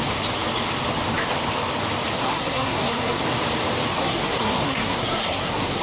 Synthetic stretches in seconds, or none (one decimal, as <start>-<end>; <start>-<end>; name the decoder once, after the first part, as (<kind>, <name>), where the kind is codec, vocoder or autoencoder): 2.2-3.2 (codec, SNAC); 3.9-5.8